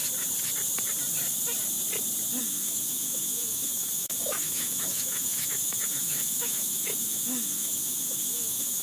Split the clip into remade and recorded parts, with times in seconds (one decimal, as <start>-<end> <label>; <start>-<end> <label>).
0.0-2.4 recorded; 2.4-8.8 remade